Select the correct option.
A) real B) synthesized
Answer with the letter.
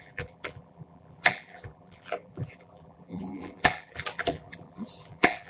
B